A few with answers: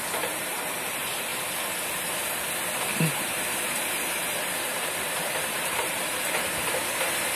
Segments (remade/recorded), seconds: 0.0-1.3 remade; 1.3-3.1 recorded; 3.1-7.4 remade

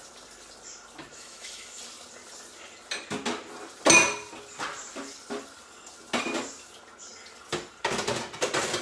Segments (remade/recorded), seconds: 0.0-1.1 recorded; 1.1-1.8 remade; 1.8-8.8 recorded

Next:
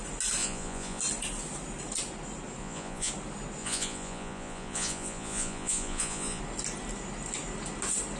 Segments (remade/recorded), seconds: 0.0-0.4 recorded; 0.4-1.0 remade; 1.0-2.6 recorded; 2.6-3.1 remade; 3.1-3.6 recorded; 3.6-6.4 remade; 6.4-8.2 recorded

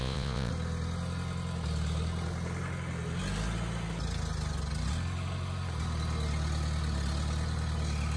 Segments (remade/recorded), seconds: 0.0-0.5 remade; 0.5-8.2 recorded

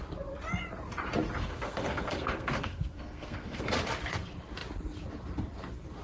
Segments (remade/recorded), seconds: 0.0-1.4 recorded; 1.4-3.7 remade; 3.7-6.0 recorded

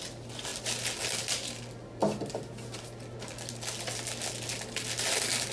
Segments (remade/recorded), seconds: 0.0-5.5 recorded

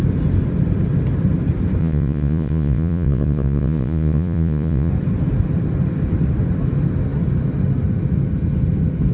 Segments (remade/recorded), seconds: 0.0-1.8 recorded; 1.8-4.9 remade; 4.9-9.1 recorded

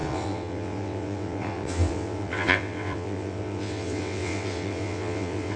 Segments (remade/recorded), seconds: 0.0-5.6 remade